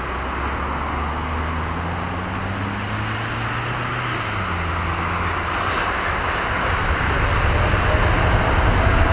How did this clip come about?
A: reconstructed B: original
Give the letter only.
B